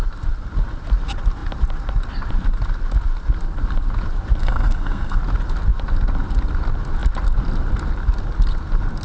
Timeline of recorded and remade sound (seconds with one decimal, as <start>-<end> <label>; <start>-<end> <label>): 0.0-4.4 recorded; 4.4-5.2 remade; 5.2-9.0 recorded